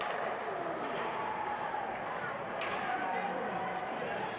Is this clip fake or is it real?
real